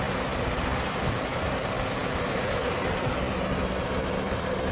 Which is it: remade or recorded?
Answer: recorded